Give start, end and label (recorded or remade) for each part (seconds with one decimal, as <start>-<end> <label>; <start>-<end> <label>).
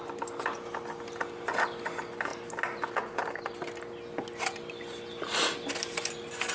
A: 0.0-6.5 recorded